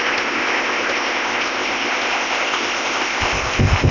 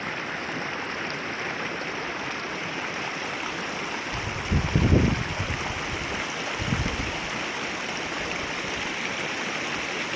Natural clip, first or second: second